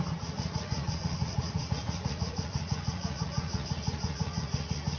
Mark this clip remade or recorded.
remade